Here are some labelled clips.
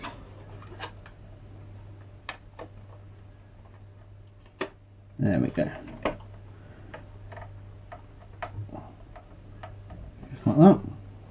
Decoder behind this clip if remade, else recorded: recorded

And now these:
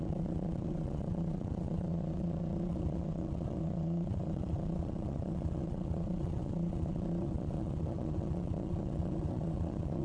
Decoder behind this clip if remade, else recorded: remade, vocoder, Vocos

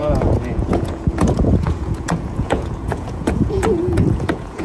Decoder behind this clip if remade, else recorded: remade, vocoder, Vocos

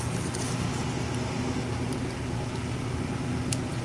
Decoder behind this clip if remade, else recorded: recorded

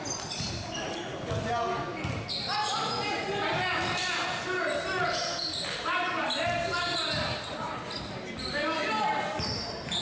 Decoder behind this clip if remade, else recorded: recorded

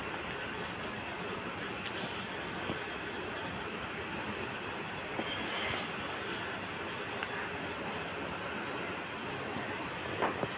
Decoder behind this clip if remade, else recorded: recorded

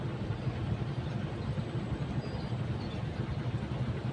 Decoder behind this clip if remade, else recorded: recorded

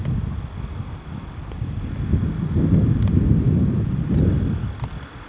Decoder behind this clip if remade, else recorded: recorded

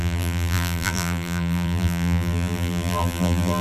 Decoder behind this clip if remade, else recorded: remade, vocoder, BigVGAN v2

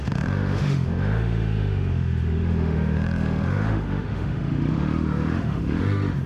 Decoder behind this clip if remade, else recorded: remade, autoencoder, DAC-VAE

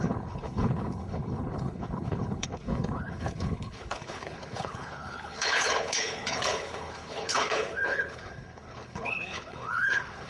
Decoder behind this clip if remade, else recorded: remade, codec, HILCodec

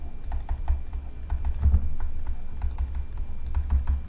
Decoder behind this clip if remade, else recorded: recorded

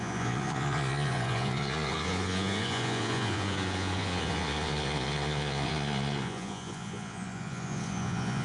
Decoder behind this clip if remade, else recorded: remade, vocoder, Vocos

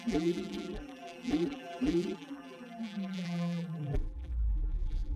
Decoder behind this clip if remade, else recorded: remade, vocoder, BigVGAN v2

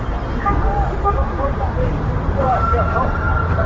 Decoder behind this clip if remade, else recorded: remade, vocoder, BigVGAN v2